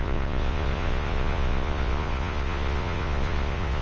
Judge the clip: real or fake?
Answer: fake